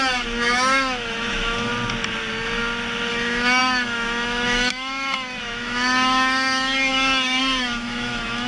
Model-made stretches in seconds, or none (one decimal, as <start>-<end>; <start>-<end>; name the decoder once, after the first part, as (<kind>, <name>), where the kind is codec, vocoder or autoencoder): 0.0-1.7 (autoencoder, DAC-VAE); 3.1-8.5